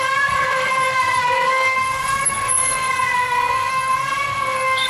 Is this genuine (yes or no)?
no